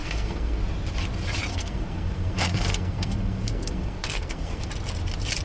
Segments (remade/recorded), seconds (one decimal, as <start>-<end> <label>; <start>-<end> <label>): 0.0-0.6 remade; 0.6-1.5 recorded; 1.5-4.7 remade; 4.7-5.4 recorded